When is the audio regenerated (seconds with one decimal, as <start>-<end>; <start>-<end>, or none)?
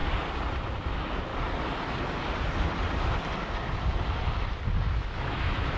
0.9-1.3; 4.8-5.8